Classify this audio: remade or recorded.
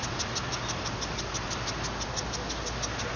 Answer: recorded